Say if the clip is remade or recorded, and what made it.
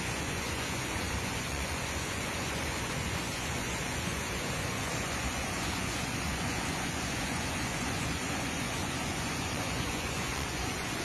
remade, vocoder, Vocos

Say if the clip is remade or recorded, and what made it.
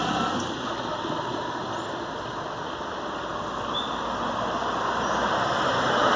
recorded